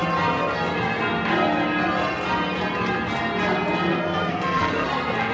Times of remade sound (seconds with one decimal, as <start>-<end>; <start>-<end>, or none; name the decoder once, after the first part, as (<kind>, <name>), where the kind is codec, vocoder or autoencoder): 3.9-5.3 (codec, SNAC)